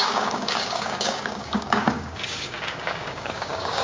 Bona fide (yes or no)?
no